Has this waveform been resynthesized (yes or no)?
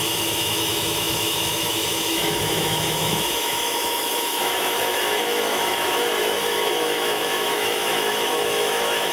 yes